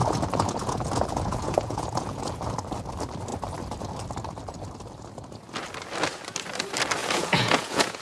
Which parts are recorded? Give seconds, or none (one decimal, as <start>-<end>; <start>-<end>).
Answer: 2.4-7.0